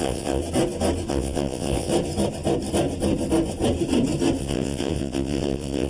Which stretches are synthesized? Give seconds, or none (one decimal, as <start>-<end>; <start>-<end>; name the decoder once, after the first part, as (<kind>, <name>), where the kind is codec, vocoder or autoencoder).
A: 0.0-0.4 (vocoder, WaveNeXt); 1.1-1.9; 4.4-5.9